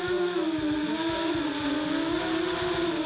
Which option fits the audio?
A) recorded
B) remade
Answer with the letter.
A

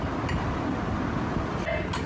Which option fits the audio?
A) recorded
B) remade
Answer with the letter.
A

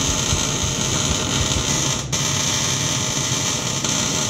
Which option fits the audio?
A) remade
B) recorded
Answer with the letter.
B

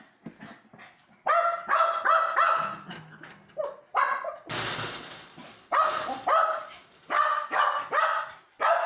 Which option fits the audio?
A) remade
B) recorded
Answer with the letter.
B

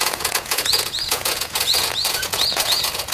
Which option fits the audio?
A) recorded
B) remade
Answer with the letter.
B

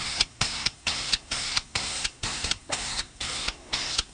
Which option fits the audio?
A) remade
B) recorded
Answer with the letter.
A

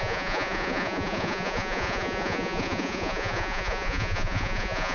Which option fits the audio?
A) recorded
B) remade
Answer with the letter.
B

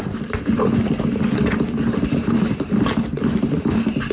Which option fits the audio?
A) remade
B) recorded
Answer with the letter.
A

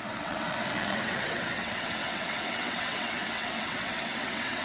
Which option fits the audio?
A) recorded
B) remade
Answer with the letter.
B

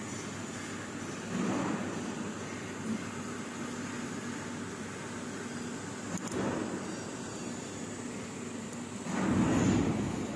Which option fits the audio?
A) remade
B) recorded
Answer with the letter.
B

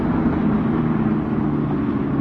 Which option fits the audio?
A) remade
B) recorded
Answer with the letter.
B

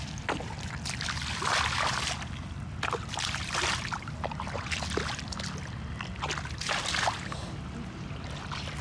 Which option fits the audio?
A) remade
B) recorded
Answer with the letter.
B